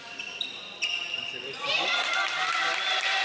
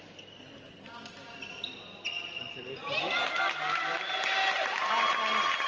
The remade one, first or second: first